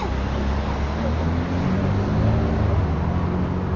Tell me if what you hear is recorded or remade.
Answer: recorded